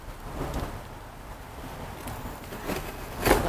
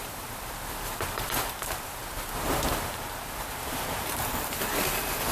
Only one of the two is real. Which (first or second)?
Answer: first